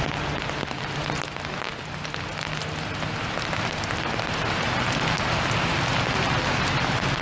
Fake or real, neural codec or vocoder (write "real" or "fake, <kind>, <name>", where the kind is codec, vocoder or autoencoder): real